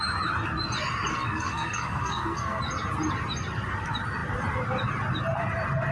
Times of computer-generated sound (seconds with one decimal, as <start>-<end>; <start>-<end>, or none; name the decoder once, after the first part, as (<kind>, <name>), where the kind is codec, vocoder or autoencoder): 1.1-2.6 (codec, SNAC)

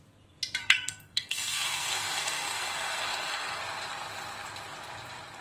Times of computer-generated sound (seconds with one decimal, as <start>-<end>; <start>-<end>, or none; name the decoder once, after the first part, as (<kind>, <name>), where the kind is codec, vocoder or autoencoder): 0.6-3.6 (codec, SNAC)

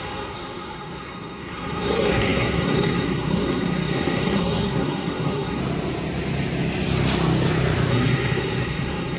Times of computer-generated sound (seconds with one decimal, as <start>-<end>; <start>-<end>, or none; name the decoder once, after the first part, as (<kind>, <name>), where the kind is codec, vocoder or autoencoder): 0.0-5.6 (codec, SNAC); 7.9-9.2

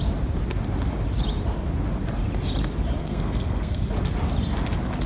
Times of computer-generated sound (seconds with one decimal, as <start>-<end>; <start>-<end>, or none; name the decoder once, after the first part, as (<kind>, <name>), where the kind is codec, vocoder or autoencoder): 3.0-3.8 (codec, SNAC)

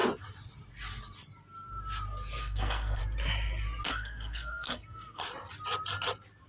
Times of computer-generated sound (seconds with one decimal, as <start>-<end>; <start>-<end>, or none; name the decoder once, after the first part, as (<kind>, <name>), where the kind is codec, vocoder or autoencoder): 2.4-3.0 (codec, SNAC); 3.9-5.2

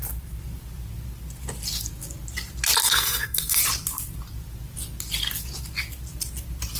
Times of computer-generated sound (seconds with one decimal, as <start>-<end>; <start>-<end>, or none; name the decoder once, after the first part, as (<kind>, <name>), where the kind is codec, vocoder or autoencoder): 2.8-3.6 (codec, SNAC)

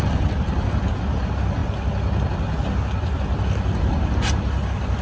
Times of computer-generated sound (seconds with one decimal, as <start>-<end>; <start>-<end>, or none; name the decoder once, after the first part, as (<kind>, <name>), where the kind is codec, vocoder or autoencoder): none

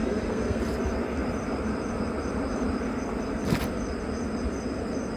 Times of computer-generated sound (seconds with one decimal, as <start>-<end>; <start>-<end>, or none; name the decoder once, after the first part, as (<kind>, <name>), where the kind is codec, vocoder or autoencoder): 0.0-0.6 (codec, SNAC)